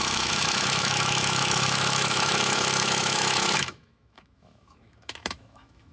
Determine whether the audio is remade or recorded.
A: remade